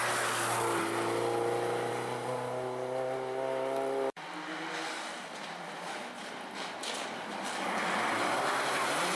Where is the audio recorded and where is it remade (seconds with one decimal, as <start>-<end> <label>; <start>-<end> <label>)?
0.0-9.2 recorded